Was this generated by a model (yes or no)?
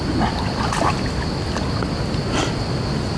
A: no